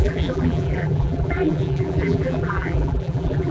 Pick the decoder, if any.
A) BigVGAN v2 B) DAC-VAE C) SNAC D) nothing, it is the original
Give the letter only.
A